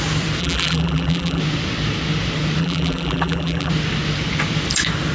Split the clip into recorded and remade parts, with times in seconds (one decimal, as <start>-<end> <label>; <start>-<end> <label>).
0.0-0.4 recorded; 0.4-1.4 remade; 1.4-2.6 recorded; 2.6-3.7 remade; 3.7-5.1 recorded